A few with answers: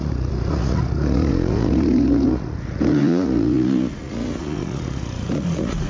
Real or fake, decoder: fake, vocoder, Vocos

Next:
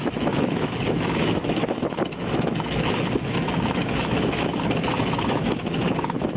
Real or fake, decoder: fake, autoencoder, DAC-VAE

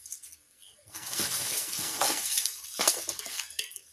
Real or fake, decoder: fake, codec, SNAC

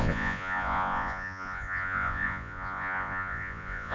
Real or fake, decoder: fake, vocoder, Vocos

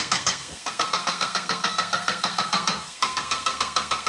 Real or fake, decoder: fake, codec, SNAC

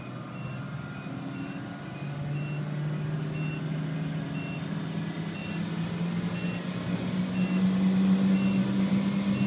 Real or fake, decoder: real